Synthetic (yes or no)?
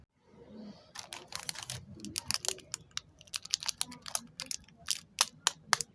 no